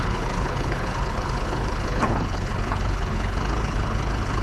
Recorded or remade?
remade